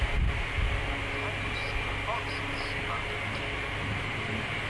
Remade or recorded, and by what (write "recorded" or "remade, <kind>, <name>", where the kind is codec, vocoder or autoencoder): recorded